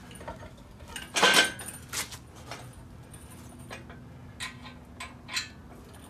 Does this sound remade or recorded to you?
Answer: recorded